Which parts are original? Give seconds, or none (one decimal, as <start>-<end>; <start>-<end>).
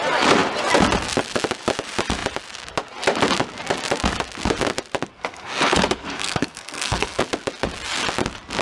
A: 0.0-5.1; 7.2-8.6